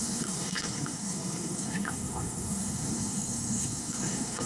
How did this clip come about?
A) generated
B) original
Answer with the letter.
A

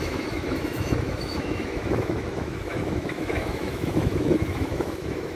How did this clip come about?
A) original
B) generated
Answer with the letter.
B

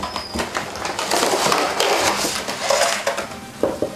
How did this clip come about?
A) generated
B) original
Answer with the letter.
B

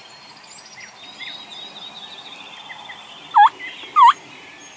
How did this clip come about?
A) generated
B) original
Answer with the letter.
B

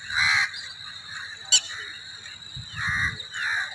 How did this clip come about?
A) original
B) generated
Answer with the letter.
A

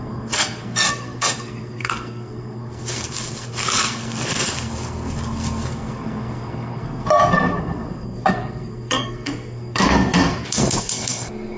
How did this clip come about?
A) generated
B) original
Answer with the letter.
A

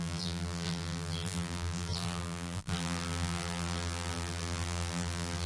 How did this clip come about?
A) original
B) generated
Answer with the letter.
B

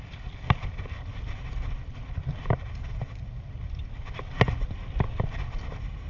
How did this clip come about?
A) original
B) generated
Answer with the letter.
A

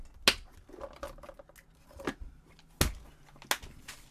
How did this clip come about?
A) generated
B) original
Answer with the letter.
B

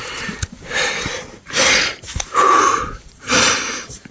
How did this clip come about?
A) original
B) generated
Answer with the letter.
B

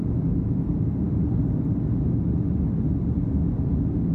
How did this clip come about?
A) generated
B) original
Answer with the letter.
B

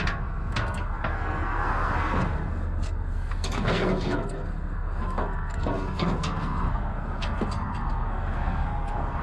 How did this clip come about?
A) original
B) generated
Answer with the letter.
B